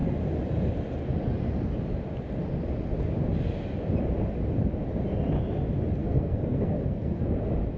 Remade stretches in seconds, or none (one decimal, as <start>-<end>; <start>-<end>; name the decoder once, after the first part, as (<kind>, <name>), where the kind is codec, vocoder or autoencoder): 6.0-7.2 (codec, SNAC)